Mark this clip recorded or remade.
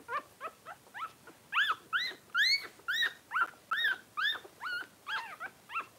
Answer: recorded